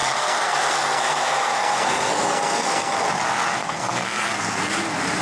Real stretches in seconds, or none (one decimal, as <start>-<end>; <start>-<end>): 3.1-3.6; 4.8-5.2